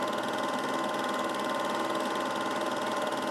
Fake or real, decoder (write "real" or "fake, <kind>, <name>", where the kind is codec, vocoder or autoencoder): real